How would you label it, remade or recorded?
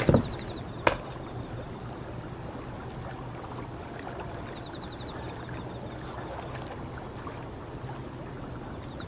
recorded